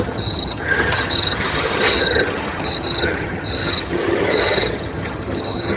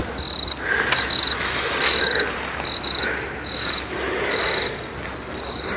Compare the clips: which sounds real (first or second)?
second